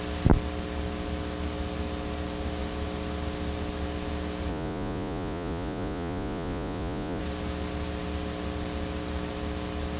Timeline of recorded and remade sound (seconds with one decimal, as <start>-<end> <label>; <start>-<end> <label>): 0.0-4.5 recorded; 4.5-7.2 remade; 7.2-10.0 recorded